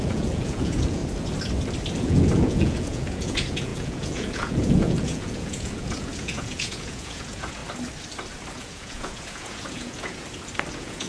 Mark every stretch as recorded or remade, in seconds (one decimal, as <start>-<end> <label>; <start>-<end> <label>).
0.0-1.0 remade; 1.0-2.0 recorded; 2.0-7.6 remade; 7.6-8.5 recorded; 8.5-10.2 remade; 10.2-10.7 recorded; 10.7-11.1 remade